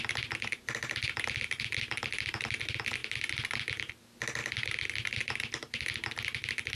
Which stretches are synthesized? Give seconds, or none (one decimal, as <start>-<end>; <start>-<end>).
none